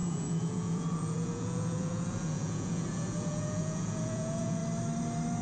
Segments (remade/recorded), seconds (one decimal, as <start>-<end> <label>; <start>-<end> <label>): 0.0-4.6 remade; 4.6-5.4 recorded